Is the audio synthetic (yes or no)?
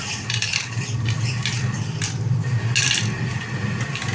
no